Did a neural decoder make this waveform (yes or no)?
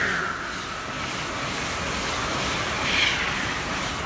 no